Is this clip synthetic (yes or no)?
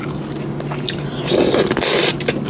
no